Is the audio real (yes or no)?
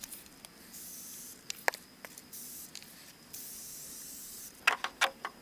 yes